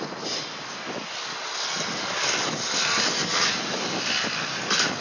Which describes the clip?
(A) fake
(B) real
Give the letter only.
B